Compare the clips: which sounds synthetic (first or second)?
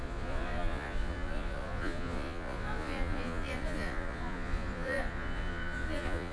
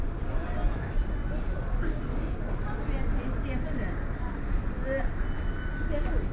first